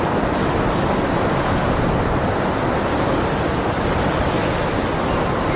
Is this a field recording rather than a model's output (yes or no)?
yes